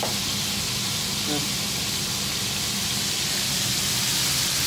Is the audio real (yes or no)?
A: yes